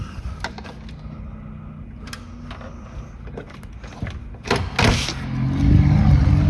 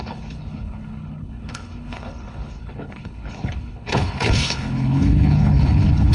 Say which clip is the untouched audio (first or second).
first